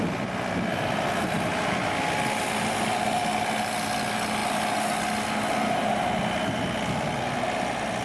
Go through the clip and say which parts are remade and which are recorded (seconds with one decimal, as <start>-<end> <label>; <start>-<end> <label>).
0.0-8.0 recorded